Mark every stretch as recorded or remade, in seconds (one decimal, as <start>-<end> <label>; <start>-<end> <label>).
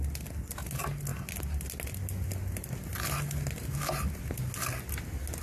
0.0-5.4 recorded